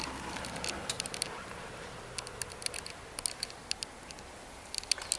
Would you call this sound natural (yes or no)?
yes